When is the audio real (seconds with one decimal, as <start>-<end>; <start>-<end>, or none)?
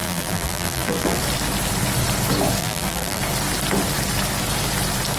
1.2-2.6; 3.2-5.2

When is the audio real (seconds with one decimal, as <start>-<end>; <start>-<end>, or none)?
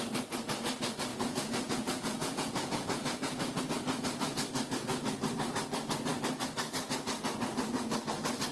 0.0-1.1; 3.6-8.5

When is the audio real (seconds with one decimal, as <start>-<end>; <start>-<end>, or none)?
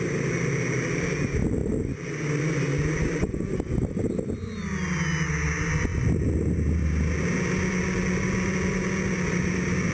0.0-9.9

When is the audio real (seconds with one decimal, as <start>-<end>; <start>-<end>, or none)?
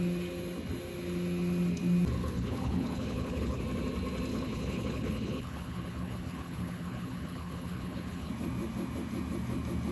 0.0-2.2; 3.6-4.3; 8.3-9.9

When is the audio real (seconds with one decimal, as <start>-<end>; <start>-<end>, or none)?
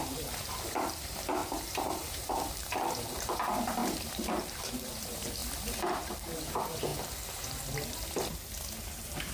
5.4-5.9; 6.9-8.9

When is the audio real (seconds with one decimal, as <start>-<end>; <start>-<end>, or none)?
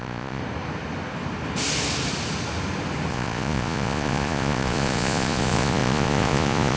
0.4-3.1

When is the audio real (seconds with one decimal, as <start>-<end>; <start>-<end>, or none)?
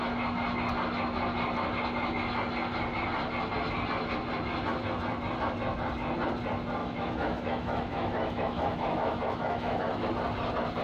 0.0-6.8; 10.1-10.8